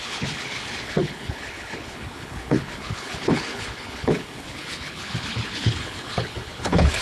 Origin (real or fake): fake